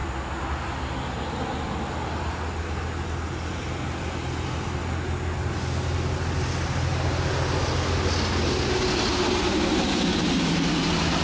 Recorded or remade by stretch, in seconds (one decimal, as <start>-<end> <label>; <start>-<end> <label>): 0.0-11.2 recorded